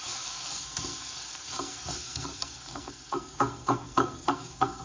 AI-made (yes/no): yes